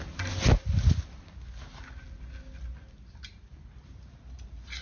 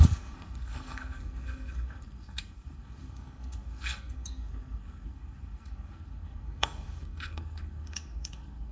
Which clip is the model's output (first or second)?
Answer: second